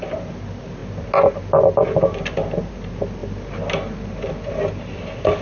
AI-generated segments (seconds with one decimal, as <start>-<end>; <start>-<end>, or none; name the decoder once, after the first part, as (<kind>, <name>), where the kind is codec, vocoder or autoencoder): none

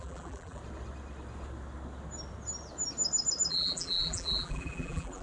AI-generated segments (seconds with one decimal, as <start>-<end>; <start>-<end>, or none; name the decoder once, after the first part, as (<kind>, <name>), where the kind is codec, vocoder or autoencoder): 0.0-0.6 (vocoder, BigVGAN v2); 3.5-5.2

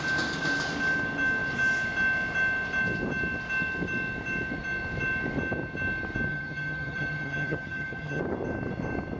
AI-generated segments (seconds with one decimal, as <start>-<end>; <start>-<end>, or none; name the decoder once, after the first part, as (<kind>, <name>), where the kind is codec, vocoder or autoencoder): 6.3-8.2 (vocoder, HiFi-GAN)